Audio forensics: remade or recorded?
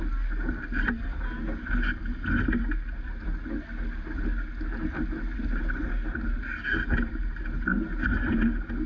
recorded